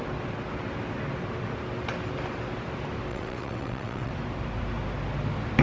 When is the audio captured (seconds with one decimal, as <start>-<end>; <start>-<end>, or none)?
0.0-3.1; 4.1-5.6